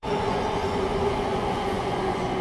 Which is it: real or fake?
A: fake